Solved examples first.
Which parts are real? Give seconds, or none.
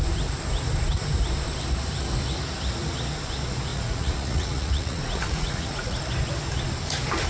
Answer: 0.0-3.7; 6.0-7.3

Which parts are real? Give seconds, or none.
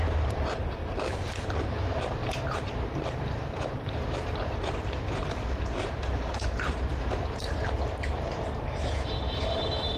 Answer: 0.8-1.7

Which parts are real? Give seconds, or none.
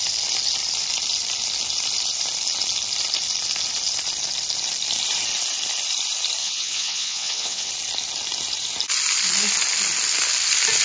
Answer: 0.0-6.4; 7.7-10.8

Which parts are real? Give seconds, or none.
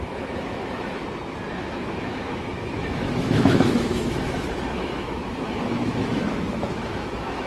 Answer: 1.0-1.6